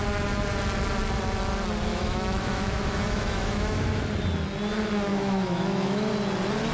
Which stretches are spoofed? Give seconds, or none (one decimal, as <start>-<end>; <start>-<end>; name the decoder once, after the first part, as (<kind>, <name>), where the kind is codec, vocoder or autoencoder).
1.9-4.0 (autoencoder, DAC-VAE); 5.1-6.1